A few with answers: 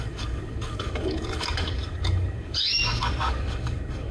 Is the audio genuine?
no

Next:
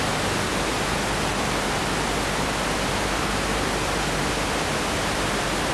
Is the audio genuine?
yes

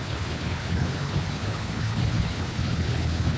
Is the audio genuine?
no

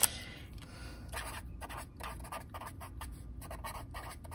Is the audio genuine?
no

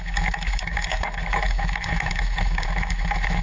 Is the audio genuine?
no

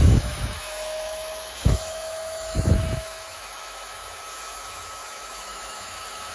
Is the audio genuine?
no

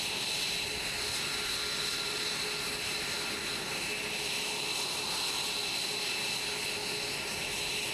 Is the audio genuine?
yes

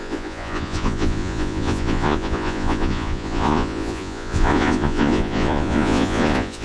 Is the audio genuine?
no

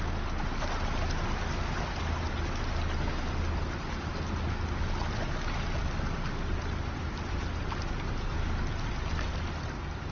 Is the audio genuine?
yes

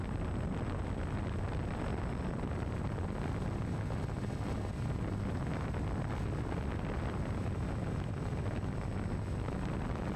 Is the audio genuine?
yes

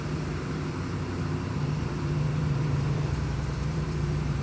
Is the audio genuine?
no